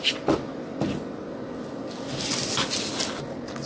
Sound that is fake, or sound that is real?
real